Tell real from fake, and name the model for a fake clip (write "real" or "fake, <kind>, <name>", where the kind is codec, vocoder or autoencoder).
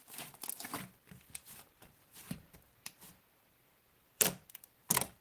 fake, vocoder, BigVGAN v2